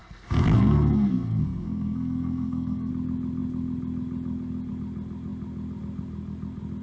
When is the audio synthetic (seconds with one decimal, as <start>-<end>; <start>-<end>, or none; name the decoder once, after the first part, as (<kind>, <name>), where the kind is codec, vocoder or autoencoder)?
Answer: 0.0-2.9 (codec, SNAC)